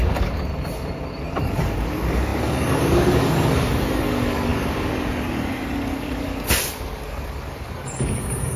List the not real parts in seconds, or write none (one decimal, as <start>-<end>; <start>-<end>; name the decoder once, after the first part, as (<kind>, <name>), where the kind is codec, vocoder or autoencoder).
0.0-0.5 (codec, DAC); 1.4-8.6